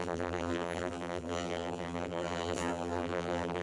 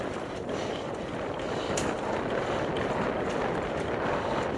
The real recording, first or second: second